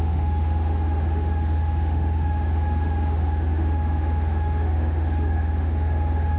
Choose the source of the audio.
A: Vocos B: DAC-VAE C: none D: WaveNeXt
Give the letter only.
B